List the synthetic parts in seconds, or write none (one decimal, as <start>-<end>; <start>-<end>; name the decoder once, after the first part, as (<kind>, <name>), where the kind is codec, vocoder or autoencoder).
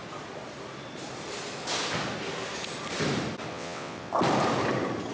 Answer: 3.5-4.1 (vocoder, WaveNeXt)